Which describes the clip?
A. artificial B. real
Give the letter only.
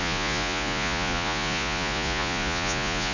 A